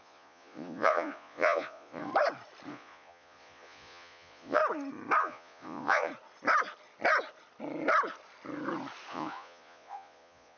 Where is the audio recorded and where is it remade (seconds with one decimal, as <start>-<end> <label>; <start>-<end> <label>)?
0.0-2.1 remade; 2.1-2.7 recorded; 2.7-4.6 remade; 4.6-5.2 recorded; 5.2-6.1 remade; 6.1-9.1 recorded; 9.1-10.6 remade